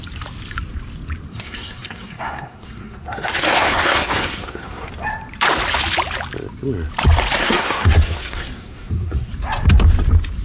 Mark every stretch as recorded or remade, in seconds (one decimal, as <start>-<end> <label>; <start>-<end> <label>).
0.0-1.3 recorded; 1.3-4.9 remade; 4.9-7.4 recorded; 7.4-9.3 remade; 9.3-10.4 recorded